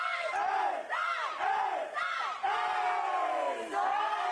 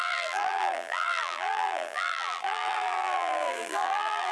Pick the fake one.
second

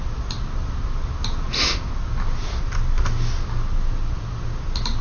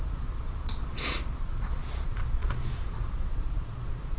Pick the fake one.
second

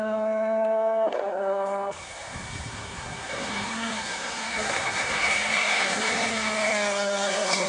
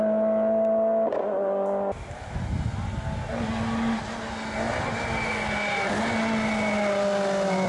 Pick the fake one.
first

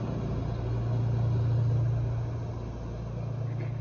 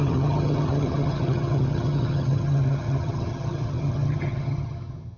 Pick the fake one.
second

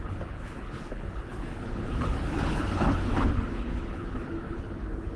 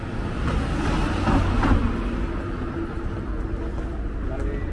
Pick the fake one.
first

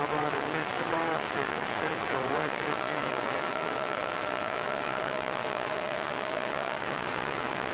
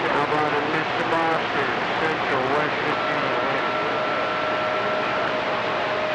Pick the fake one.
first